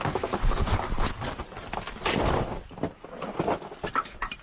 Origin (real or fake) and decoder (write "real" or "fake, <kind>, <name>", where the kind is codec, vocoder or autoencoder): real